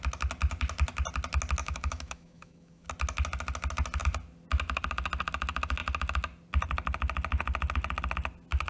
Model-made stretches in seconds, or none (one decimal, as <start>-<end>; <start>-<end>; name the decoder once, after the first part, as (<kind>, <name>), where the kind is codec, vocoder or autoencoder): 1.6-2.9 (autoencoder, DAC-VAE)